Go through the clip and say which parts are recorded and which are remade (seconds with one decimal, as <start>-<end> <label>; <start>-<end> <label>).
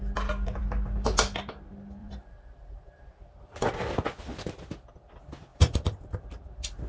0.0-2.0 recorded; 2.0-3.7 remade; 3.7-5.5 recorded; 5.5-6.2 remade; 6.2-6.9 recorded